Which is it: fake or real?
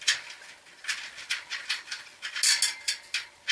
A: real